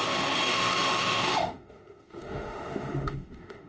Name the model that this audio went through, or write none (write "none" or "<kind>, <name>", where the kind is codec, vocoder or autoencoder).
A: autoencoder, DAC-VAE